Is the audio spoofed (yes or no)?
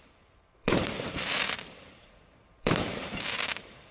yes